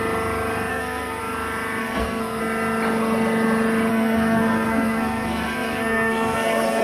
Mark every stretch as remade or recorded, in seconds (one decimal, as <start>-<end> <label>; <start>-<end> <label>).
0.0-0.7 recorded; 0.7-1.2 remade; 1.2-1.8 recorded; 1.8-2.4 remade; 2.4-3.9 recorded; 3.9-6.8 remade